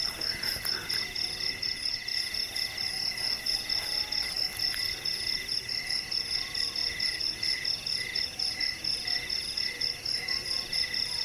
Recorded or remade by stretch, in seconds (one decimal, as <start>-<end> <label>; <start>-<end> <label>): 0.0-11.2 recorded